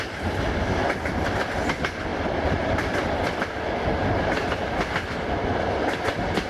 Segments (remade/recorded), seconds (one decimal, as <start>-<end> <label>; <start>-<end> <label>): 0.0-2.1 recorded; 2.1-3.5 remade; 3.5-6.5 recorded